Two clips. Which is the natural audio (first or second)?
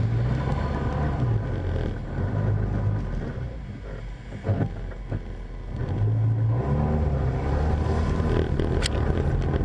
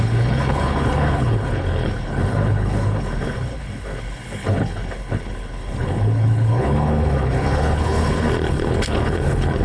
first